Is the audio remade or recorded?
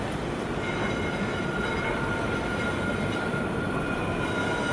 recorded